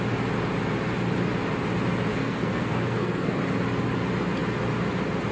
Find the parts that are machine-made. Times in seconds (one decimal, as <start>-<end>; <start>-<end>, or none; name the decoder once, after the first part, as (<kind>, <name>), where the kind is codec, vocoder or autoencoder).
2.1-3.4 (codec, SNAC)